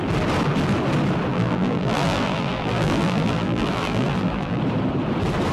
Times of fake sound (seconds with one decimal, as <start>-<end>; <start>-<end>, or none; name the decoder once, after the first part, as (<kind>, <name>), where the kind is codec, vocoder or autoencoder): 1.3-4.6 (vocoder, BigVGAN v2)